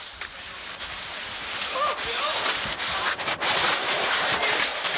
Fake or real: real